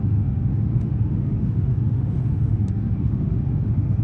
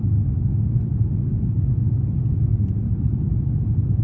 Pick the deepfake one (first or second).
first